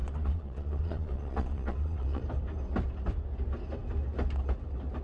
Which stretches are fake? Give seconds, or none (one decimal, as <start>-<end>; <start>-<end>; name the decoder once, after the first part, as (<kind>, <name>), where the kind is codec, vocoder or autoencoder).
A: 0.0-2.2 (vocoder, Vocos)